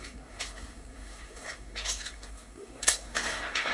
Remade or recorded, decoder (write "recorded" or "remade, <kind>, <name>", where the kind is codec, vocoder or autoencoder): remade, codec, SNAC